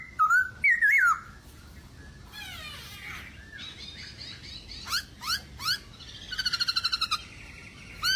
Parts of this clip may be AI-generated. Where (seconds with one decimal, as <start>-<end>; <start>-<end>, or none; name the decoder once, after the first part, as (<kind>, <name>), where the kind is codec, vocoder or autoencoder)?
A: 7.2-8.2 (vocoder, BigVGAN v2)